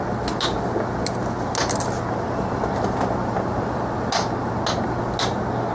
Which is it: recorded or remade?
recorded